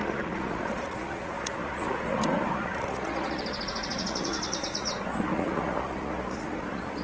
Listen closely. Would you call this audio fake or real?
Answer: fake